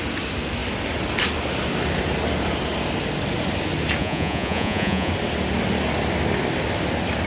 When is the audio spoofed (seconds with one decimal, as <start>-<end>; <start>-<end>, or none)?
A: 4.0-5.1